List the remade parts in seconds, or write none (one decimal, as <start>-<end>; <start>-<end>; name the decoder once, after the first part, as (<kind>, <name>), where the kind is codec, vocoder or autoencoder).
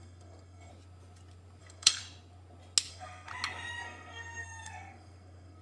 0.0-0.7 (codec, SNAC); 1.6-2.0; 2.9-3.3; 3.8-5.6